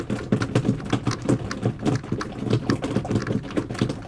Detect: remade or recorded recorded